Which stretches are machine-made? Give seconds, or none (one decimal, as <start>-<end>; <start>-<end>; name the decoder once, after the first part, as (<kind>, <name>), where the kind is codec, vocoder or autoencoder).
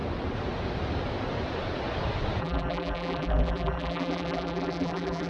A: 2.4-5.3 (vocoder, BigVGAN v2)